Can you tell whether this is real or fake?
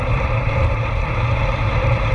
fake